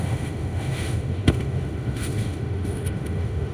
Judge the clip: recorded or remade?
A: remade